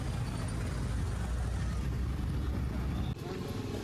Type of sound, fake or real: real